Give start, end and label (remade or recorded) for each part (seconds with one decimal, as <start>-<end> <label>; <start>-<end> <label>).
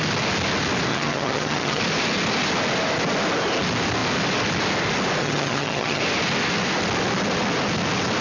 0.0-0.9 recorded; 0.9-1.8 remade; 1.8-5.2 recorded; 5.2-6.0 remade; 6.0-8.2 recorded